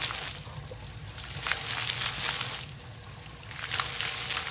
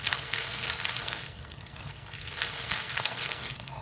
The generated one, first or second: second